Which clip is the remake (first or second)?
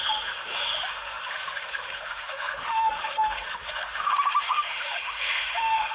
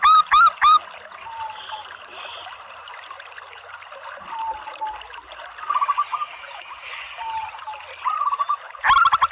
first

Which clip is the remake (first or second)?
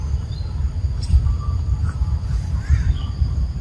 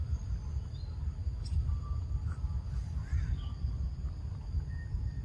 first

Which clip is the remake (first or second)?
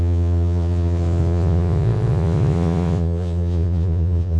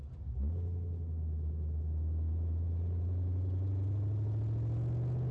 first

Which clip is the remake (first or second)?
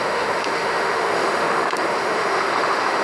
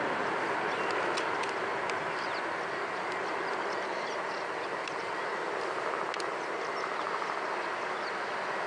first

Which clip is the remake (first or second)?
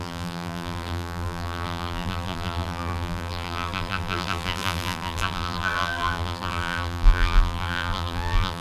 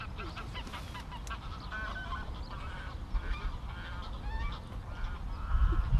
first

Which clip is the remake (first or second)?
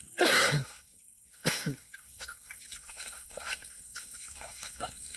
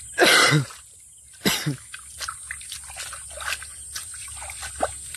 first